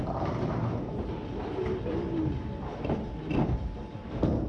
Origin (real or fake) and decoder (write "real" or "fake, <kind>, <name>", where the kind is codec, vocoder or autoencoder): real